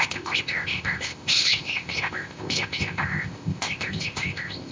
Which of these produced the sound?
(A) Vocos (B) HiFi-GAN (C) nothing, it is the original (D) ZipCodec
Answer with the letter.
D